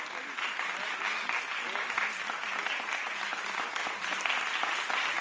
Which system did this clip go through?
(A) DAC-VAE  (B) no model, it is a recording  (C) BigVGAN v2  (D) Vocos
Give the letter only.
B